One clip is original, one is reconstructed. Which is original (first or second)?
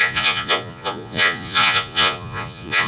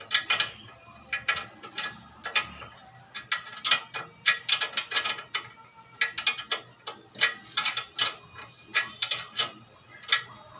second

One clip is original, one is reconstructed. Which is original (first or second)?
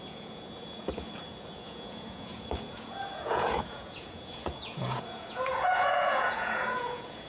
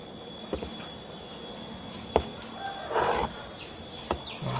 second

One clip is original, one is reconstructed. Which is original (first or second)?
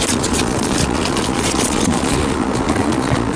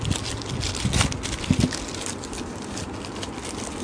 second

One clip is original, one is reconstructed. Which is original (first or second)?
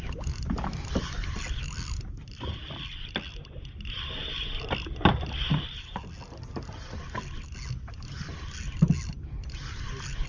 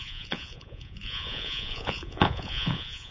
first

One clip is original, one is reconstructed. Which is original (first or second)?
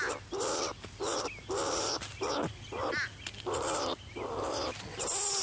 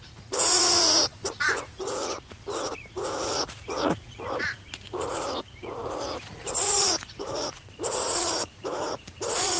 first